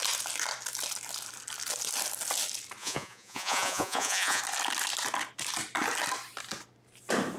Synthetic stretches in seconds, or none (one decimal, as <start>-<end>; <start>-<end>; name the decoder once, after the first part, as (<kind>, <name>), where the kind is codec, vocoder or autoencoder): 2.8-4.4 (vocoder, Vocos)